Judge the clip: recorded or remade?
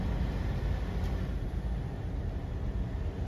recorded